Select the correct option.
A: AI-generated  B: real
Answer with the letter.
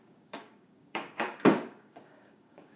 A